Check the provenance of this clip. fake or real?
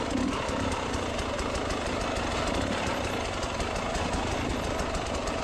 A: real